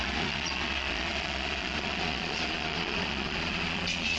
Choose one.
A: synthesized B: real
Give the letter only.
A